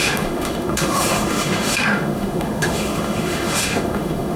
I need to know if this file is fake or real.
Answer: fake